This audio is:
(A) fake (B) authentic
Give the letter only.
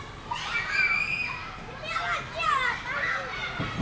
B